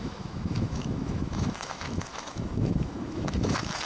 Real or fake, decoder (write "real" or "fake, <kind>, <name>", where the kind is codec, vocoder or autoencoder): fake, autoencoder, DAC-VAE